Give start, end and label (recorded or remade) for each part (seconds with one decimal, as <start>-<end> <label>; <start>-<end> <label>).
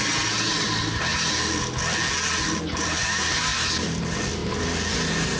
0.0-1.1 remade; 1.1-2.8 recorded; 2.8-3.5 remade; 3.5-4.0 recorded; 4.0-4.4 remade; 4.4-5.4 recorded